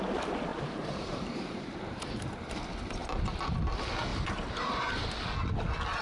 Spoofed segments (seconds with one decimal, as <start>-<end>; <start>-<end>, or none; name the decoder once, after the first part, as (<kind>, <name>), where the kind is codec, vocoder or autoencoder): 0.5-2.5 (vocoder, BigVGAN v2); 4.1-5.1

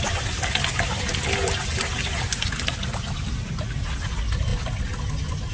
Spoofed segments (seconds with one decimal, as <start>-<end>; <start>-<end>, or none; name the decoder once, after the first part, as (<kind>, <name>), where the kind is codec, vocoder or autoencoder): none

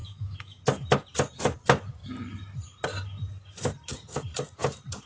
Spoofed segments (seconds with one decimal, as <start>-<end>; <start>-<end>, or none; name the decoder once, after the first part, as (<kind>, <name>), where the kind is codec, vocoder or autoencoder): 0.0-0.6 (autoencoder, DAC-VAE)